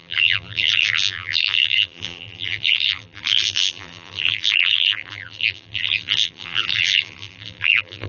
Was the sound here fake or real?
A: fake